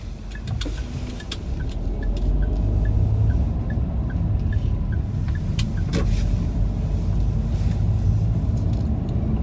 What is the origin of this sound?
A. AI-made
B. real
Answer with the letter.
B